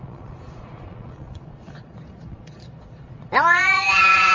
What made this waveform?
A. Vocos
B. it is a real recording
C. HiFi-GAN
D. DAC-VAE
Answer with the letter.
A